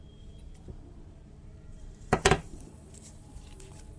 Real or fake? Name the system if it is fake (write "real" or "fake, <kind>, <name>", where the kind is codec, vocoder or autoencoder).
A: fake, vocoder, BigVGAN v2